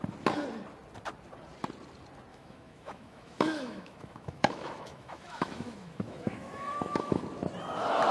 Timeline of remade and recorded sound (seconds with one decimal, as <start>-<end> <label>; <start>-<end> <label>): 0.0-2.3 recorded; 2.3-7.2 remade; 7.2-8.1 recorded